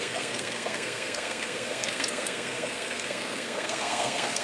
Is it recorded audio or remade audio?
remade